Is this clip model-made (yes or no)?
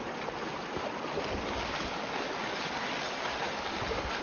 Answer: no